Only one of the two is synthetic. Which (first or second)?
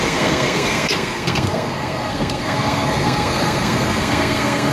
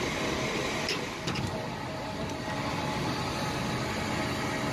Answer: first